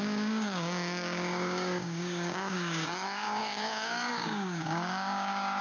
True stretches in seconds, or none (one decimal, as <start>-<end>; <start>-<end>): none